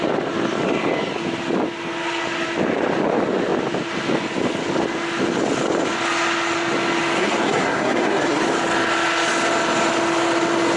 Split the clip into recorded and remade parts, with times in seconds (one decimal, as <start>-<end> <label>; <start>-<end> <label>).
0.0-7.2 recorded; 7.2-8.4 remade; 8.4-10.8 recorded